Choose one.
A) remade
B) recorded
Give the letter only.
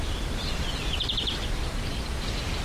A